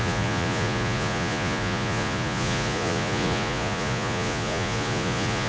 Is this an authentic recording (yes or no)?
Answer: no